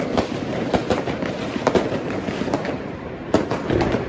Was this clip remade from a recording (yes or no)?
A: yes